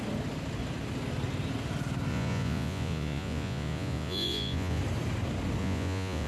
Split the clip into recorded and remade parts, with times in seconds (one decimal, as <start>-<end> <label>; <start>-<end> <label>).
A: 0.0-2.1 recorded; 2.1-4.8 remade; 4.8-5.6 recorded; 5.6-6.3 remade